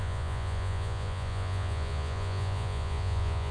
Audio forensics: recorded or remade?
remade